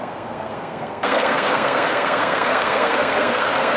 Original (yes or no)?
no